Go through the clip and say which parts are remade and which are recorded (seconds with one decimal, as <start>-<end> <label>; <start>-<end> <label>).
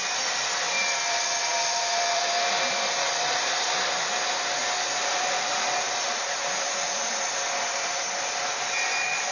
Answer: 0.0-4.6 remade; 4.6-5.1 recorded; 5.1-9.3 remade